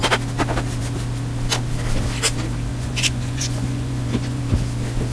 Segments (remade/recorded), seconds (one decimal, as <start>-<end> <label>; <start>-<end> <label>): 0.0-2.7 recorded; 2.7-4.4 remade; 4.4-5.1 recorded